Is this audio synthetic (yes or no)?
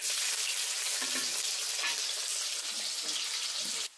no